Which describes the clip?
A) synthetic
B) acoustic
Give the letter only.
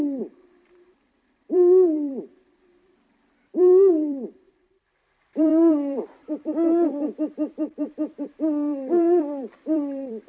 A